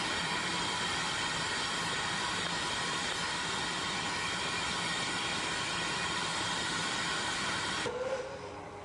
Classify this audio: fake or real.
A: fake